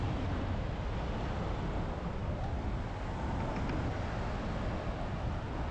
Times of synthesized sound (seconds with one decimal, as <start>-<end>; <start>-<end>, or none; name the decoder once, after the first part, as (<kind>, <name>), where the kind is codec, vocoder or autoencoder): none